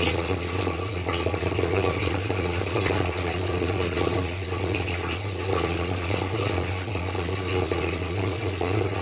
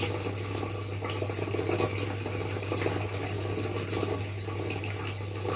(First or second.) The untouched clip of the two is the second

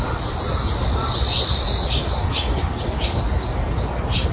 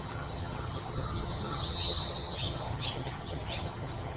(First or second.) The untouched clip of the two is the first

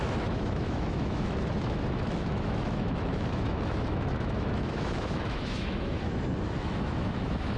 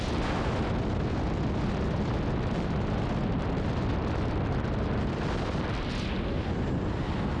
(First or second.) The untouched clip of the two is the second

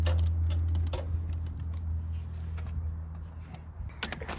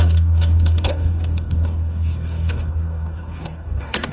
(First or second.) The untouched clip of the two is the first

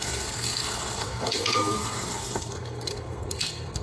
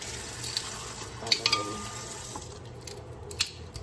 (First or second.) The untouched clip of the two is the second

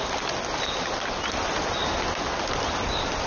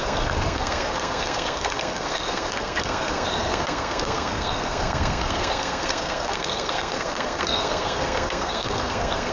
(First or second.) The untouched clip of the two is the first